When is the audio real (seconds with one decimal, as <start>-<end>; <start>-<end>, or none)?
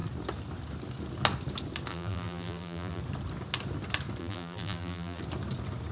0.0-1.9; 3.0-4.2; 5.2-5.9